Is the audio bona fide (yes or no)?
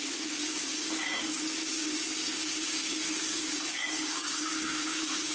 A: no